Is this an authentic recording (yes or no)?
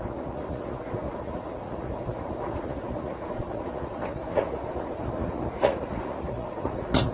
no